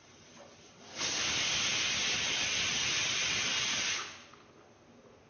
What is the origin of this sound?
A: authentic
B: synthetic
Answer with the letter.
A